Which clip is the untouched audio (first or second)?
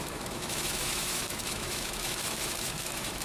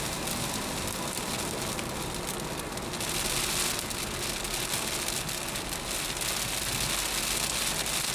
second